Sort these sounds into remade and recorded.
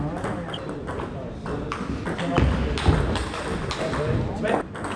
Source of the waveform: recorded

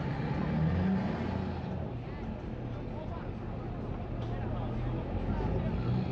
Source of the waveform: recorded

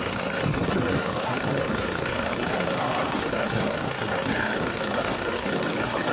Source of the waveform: remade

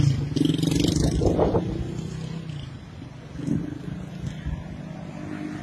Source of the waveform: recorded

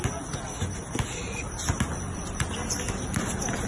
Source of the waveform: recorded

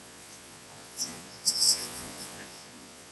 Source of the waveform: remade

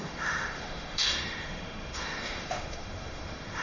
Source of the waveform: remade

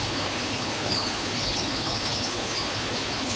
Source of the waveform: remade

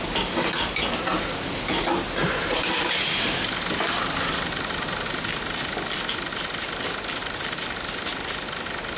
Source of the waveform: recorded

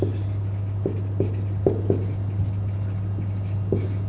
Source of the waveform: recorded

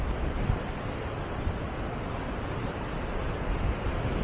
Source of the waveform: recorded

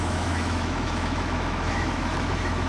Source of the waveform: remade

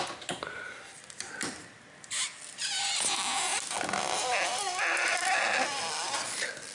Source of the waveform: recorded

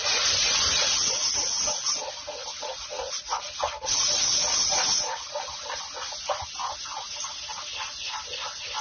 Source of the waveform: recorded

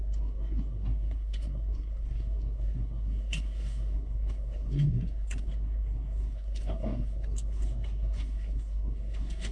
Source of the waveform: remade